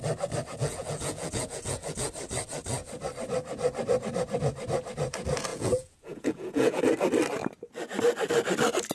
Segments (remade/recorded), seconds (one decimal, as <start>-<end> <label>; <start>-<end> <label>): 0.0-0.5 recorded; 0.5-2.1 remade; 2.1-5.5 recorded; 5.5-6.8 remade; 6.8-8.9 recorded